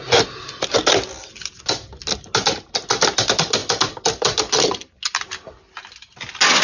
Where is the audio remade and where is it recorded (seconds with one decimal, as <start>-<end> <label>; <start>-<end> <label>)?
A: 0.0-6.6 recorded